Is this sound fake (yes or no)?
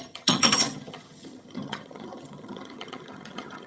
yes